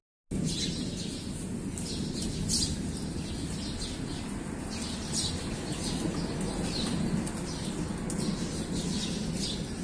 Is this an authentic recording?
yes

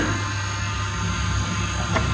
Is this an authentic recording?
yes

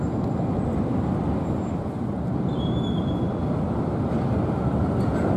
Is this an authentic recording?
yes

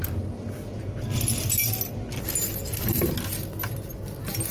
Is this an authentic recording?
yes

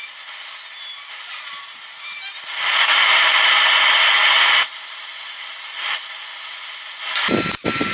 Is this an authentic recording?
yes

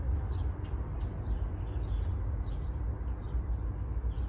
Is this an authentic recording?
yes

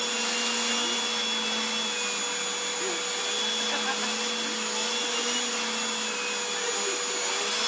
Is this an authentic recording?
yes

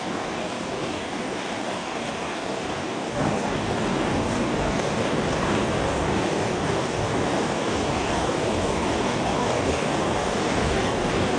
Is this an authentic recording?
no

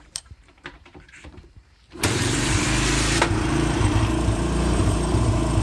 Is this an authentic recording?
no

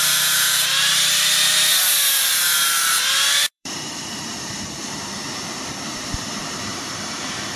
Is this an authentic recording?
no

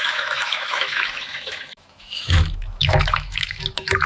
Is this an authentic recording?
no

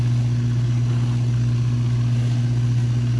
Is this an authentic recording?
yes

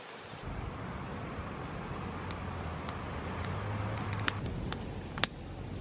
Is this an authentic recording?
yes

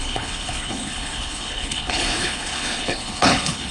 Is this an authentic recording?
no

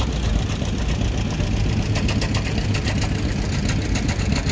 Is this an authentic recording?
yes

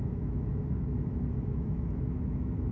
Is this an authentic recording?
no